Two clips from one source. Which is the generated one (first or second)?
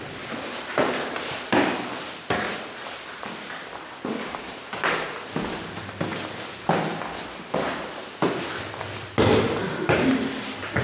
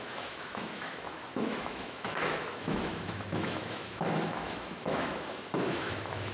second